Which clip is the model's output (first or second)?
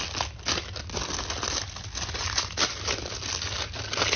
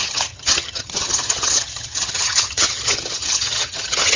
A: second